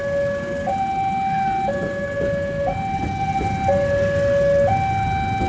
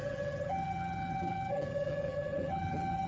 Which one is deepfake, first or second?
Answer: second